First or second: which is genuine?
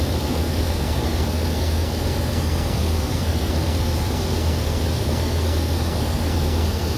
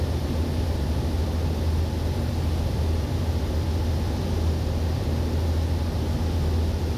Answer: second